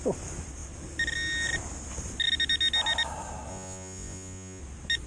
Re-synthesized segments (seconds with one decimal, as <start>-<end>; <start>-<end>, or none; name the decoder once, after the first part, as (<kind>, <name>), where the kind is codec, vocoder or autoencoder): 3.5-4.6 (vocoder, Vocos)